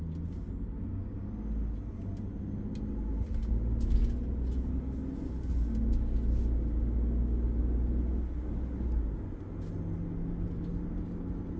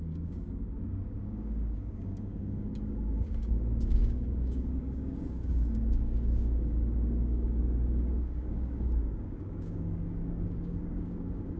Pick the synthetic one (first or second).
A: second